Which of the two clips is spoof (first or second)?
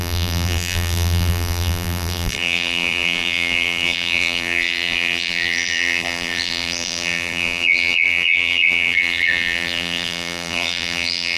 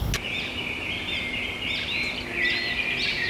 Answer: first